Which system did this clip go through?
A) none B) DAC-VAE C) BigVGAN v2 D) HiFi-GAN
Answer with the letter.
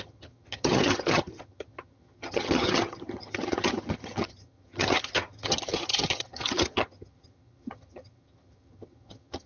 D